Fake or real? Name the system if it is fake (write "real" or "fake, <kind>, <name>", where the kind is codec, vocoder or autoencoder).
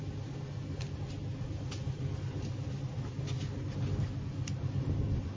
real